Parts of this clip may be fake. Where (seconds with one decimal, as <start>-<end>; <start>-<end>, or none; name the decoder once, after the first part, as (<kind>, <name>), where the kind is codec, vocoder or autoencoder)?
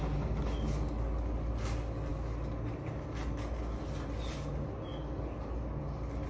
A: none